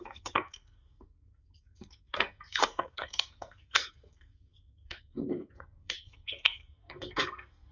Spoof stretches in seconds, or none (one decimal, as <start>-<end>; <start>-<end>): 0.0-7.7